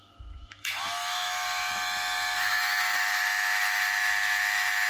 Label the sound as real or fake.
fake